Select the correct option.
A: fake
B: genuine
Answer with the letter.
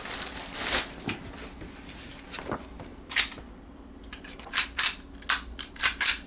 B